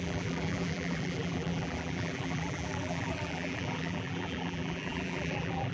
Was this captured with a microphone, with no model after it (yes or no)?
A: no